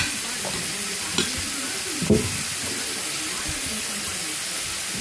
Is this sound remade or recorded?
recorded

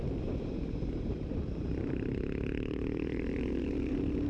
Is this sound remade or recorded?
remade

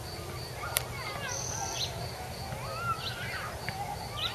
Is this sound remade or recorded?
recorded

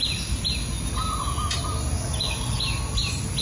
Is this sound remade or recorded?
recorded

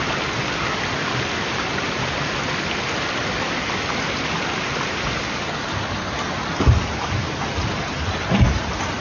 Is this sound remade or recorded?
recorded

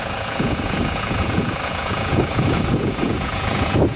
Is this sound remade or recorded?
remade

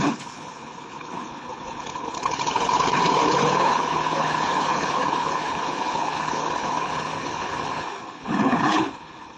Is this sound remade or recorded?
remade